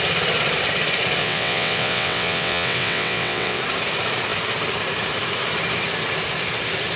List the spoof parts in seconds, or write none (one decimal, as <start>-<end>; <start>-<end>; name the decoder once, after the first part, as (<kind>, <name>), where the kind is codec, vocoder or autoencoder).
1.2-3.6 (vocoder, WaveNeXt)